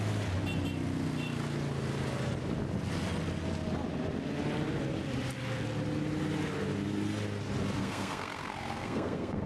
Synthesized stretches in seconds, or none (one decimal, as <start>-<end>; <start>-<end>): 7.8-9.5